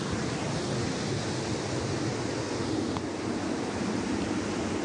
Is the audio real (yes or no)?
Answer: yes